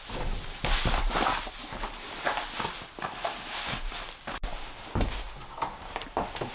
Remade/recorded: recorded